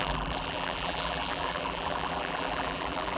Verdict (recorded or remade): remade